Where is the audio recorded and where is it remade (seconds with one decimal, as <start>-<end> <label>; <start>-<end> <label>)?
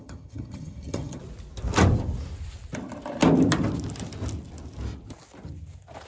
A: 0.0-1.2 remade; 1.2-6.1 recorded